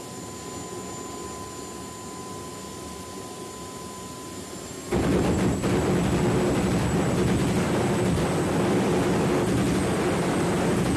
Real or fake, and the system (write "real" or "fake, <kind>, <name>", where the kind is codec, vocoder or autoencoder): real